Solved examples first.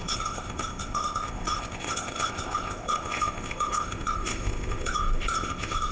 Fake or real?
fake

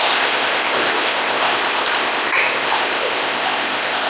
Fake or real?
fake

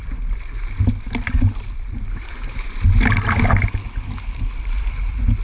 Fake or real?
real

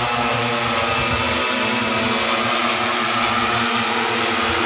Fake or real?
real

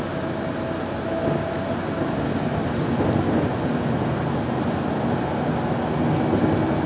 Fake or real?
real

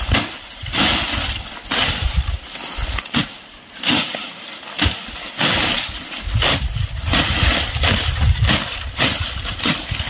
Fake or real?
real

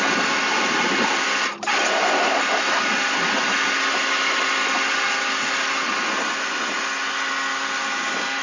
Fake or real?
real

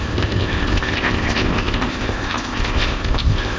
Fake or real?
fake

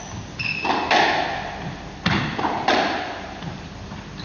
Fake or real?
real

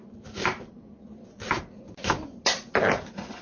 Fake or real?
real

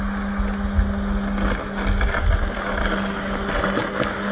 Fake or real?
real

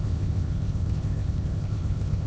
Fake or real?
fake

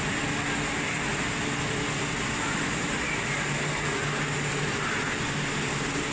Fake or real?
real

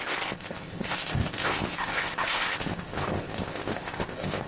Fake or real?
fake